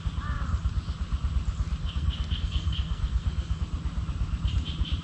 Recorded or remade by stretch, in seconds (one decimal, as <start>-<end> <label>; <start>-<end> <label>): 0.0-1.8 recorded; 1.8-3.6 remade; 3.6-5.0 recorded